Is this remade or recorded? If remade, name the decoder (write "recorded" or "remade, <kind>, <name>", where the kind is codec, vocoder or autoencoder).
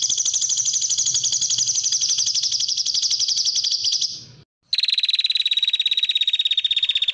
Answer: recorded